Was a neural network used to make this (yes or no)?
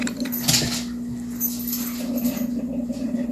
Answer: no